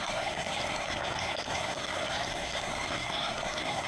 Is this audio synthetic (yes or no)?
yes